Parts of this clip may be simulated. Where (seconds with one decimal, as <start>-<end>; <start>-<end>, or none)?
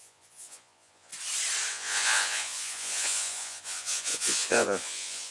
0.0-1.1; 1.7-5.3